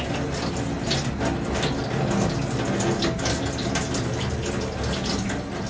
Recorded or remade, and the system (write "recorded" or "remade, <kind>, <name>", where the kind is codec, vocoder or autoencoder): recorded